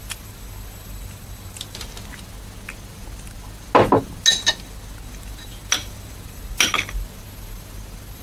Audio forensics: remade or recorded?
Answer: recorded